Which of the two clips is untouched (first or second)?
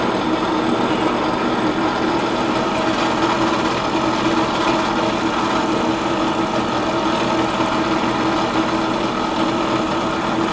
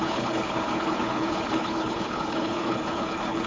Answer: first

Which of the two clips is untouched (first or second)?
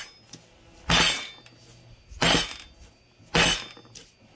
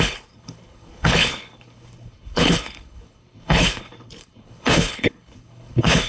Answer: first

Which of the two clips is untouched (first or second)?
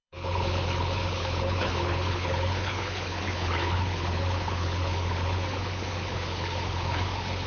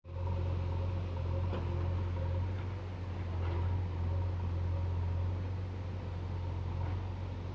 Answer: second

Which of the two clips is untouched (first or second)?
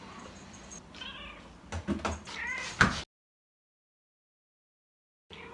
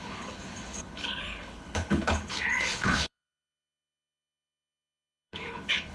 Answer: first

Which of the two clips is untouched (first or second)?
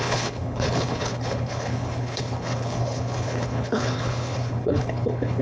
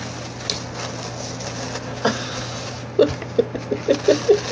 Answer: second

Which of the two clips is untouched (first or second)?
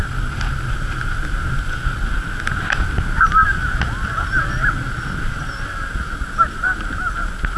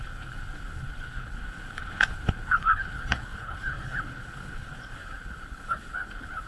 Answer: first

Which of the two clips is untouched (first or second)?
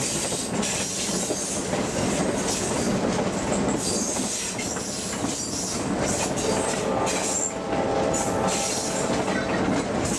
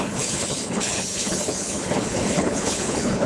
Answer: first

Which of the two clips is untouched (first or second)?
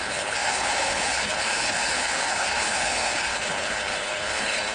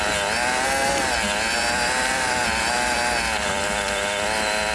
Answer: second